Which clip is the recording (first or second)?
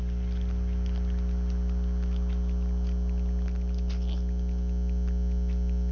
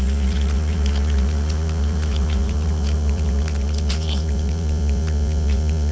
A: first